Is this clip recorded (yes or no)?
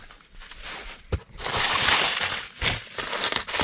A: yes